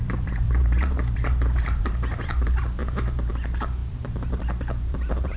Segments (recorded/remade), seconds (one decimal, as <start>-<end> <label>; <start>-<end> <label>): 0.0-5.4 remade